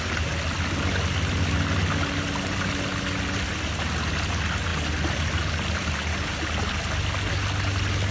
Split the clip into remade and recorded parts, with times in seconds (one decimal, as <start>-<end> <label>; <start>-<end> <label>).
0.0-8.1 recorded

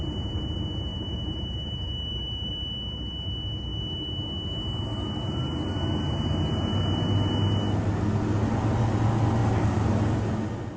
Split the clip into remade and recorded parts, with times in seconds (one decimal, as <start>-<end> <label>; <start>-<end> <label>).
0.0-0.9 recorded; 0.9-2.5 remade; 2.5-9.4 recorded; 9.4-10.0 remade; 10.0-10.8 recorded

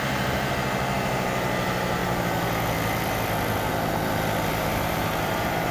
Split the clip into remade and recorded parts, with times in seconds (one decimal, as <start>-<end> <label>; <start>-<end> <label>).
0.0-2.0 remade; 2.0-4.5 recorded; 4.5-5.7 remade

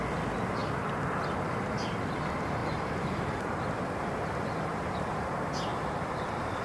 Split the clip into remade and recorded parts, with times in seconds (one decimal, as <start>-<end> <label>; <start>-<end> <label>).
0.0-2.6 recorded; 2.6-3.6 remade; 3.6-4.7 recorded; 4.7-5.3 remade; 5.3-5.7 recorded; 5.7-6.6 remade

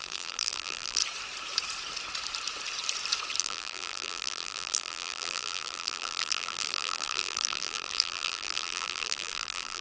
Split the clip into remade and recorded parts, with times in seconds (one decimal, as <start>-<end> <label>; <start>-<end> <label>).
0.0-1.0 remade; 1.0-3.4 recorded; 3.4-9.8 remade

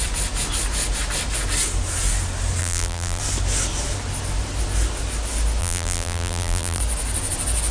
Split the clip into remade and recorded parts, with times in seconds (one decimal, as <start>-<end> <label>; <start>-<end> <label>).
0.0-2.6 recorded; 2.6-3.2 remade; 3.2-5.6 recorded; 5.6-6.8 remade; 6.8-7.7 recorded

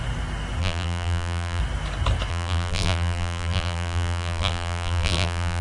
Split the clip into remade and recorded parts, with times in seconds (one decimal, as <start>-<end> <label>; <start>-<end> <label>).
0.0-0.6 recorded; 0.6-1.6 remade; 1.6-2.3 recorded; 2.3-5.6 remade